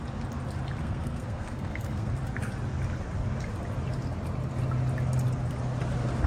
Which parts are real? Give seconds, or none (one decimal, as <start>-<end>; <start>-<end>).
0.0-0.8; 2.1-6.3